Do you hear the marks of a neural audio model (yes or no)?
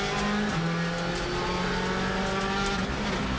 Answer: no